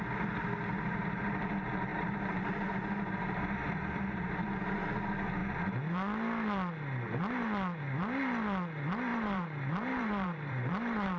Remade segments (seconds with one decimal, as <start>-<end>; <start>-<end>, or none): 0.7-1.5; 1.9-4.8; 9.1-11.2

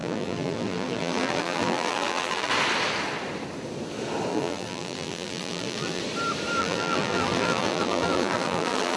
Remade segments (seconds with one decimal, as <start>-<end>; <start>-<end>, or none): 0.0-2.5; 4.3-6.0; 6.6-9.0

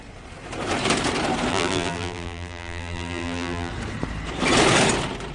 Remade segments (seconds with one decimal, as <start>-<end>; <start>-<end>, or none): 1.5-3.7

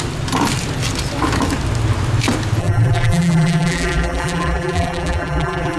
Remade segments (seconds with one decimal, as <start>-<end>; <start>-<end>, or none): 2.6-5.8

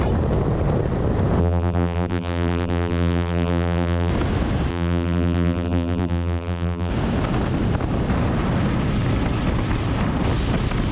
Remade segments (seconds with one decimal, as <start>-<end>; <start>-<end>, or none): 1.4-4.1; 4.7-6.9

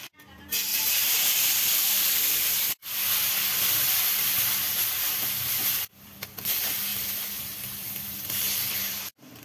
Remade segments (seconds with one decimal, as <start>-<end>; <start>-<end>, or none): 0.7-5.8

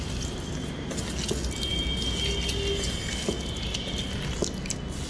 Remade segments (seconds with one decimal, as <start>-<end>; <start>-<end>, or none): none

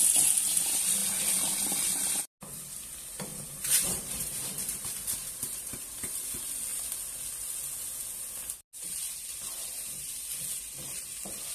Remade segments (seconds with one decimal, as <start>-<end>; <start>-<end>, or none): 3.3-6.3